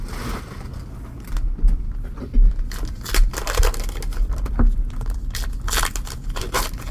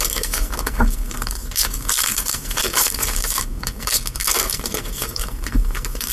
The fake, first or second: second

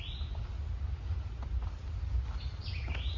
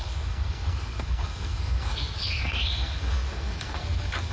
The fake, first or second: second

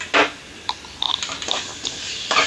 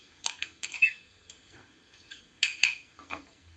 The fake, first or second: second